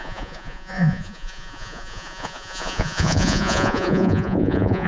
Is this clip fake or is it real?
fake